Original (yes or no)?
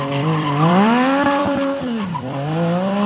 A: no